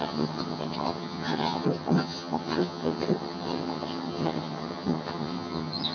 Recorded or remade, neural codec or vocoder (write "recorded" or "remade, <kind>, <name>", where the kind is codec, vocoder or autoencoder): remade, vocoder, HiFi-GAN